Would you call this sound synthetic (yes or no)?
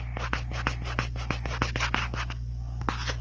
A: no